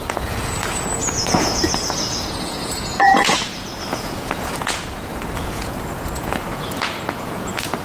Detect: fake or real fake